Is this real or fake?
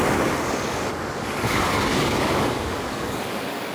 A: fake